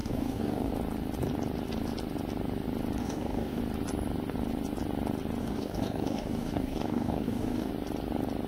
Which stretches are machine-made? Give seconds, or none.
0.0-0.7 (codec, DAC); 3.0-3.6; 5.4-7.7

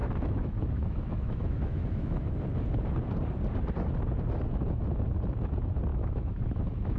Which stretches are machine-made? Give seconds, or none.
0.0-2.3 (autoencoder, DAC-VAE); 5.9-7.0

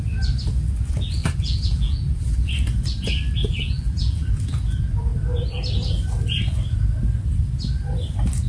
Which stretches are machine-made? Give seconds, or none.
1.2-2.5 (vocoder, BigVGAN v2); 3.4-4.3